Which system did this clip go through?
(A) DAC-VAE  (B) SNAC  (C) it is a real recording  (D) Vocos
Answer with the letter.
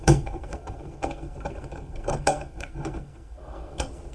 B